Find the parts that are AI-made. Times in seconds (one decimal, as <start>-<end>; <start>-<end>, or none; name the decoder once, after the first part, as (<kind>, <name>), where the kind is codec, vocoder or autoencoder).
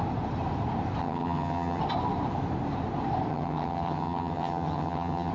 1.0-1.8 (vocoder, HiFi-GAN); 3.3-5.3